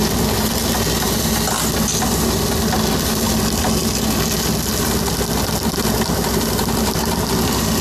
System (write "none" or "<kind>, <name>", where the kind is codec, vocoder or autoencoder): none